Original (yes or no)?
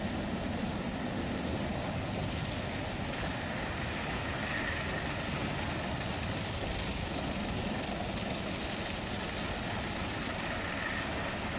yes